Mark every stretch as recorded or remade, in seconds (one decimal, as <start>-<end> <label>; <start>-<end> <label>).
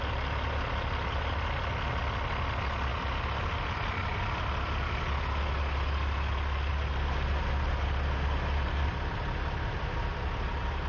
0.0-10.9 recorded